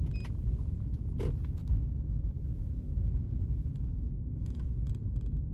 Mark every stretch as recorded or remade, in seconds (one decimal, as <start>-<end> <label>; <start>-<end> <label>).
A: 0.0-1.6 recorded; 1.6-4.9 remade; 4.9-5.5 recorded